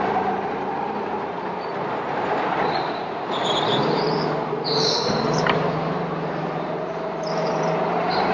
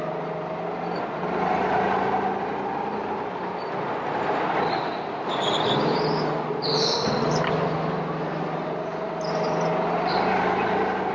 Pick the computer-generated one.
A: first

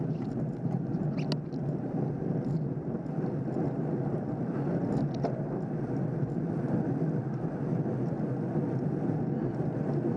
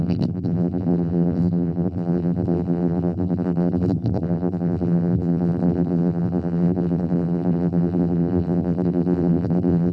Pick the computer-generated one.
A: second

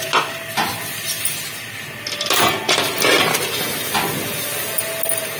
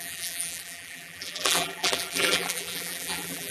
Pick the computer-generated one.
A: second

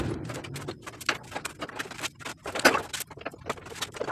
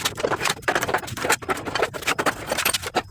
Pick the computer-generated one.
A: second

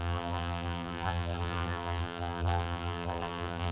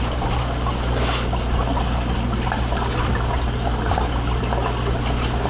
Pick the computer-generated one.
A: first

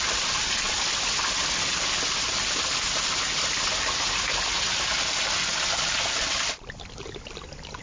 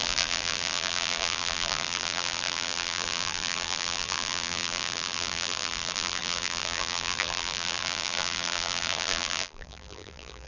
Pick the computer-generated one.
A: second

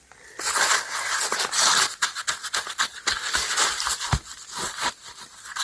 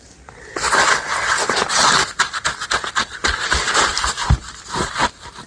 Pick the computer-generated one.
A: first